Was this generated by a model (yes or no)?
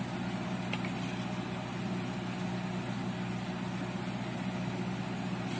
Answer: no